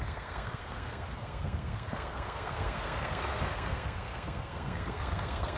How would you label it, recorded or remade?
remade